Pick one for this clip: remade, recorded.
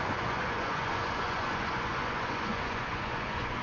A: remade